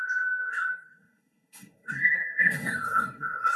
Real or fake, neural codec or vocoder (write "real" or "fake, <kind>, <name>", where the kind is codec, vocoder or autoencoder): fake, codec, SNAC